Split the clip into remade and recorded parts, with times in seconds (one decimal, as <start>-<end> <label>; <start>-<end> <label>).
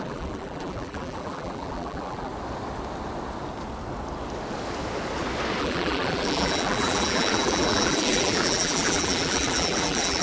0.0-2.3 remade; 2.3-5.6 recorded; 5.6-10.2 remade